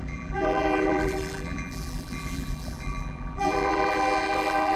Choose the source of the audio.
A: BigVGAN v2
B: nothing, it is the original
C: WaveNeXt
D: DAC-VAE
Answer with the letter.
A